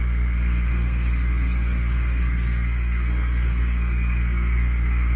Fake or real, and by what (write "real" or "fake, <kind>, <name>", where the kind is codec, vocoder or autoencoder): fake, codec, SNAC